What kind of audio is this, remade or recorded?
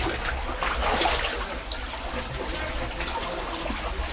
recorded